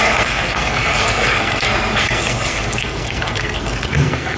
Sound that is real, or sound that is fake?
fake